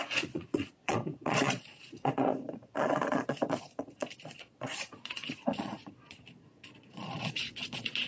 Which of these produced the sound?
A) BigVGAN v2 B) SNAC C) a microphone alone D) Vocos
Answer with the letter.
D